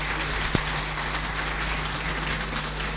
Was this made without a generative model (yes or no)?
yes